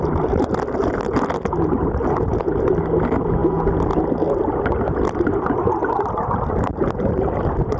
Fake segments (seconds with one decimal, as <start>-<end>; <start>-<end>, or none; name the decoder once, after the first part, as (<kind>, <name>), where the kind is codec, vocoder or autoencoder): none